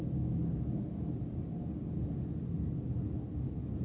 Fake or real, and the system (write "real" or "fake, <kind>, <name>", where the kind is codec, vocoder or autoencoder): real